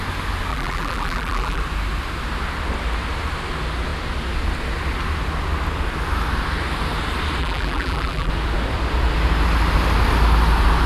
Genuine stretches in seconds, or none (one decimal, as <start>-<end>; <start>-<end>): 0.0-0.5; 1.6-7.4; 8.3-10.9